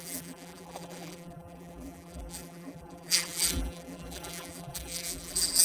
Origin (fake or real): fake